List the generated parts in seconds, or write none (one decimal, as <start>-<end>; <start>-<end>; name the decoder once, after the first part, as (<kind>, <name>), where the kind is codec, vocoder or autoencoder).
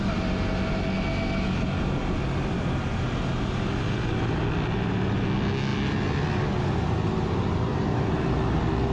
none